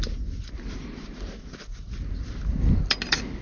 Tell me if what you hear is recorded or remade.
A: recorded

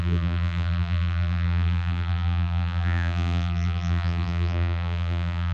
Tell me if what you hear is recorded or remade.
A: remade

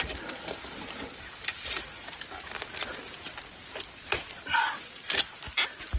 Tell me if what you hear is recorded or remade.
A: recorded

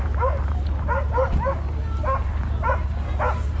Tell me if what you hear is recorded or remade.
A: recorded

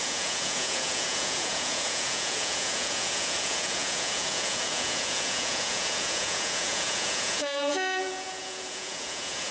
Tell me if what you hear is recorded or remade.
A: remade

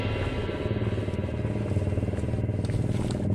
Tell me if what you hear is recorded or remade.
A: recorded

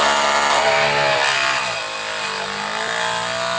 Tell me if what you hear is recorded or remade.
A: recorded